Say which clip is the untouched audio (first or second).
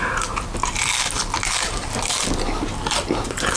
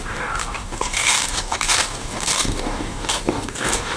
first